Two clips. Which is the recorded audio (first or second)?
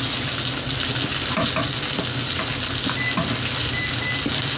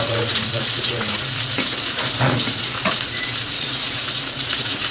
first